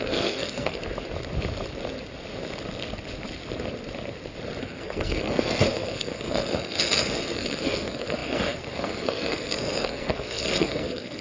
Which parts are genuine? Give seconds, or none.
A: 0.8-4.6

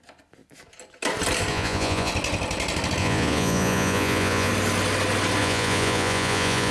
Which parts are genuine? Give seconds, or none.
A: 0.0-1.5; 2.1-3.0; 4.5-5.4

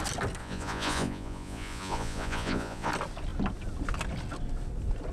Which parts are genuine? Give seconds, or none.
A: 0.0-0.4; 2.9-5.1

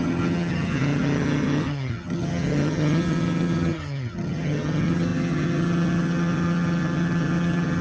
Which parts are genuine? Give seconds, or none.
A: none

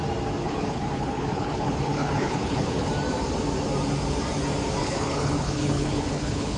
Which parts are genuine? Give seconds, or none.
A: 0.0-0.4; 2.9-4.8

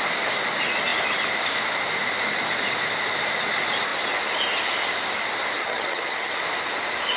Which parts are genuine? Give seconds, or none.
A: 0.0-5.6; 6.3-7.2